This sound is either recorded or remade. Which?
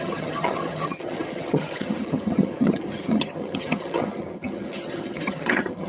remade